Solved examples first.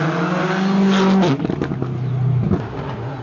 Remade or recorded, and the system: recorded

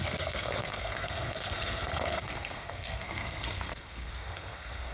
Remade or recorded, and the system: remade, codec, SNAC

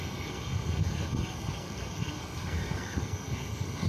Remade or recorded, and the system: remade, codec, SNAC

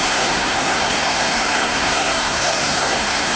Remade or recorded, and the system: remade, codec, SNAC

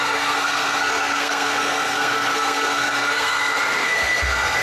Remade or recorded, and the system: remade, codec, SNAC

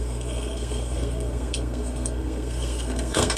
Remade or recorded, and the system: remade, codec, SNAC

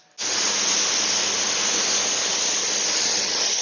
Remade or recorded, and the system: recorded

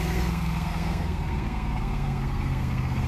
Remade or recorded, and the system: remade, codec, SNAC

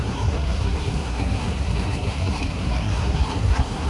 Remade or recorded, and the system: remade, codec, SNAC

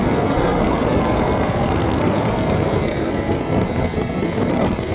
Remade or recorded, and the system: remade, codec, SNAC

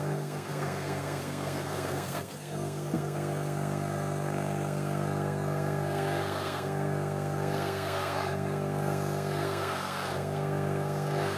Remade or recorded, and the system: remade, codec, SNAC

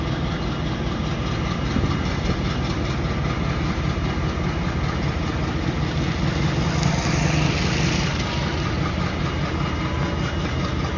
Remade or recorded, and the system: recorded